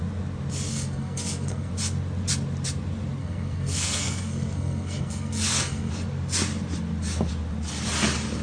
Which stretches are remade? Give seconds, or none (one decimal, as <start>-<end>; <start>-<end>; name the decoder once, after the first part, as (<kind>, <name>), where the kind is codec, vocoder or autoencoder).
0.7-1.7 (codec, SNAC); 3.2-5.9